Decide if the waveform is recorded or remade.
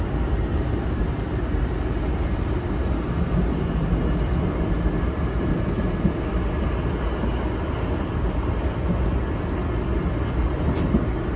recorded